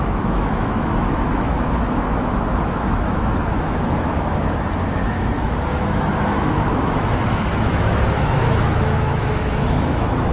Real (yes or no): no